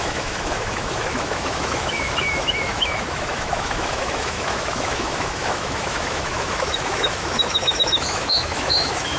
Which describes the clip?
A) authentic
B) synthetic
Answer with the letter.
B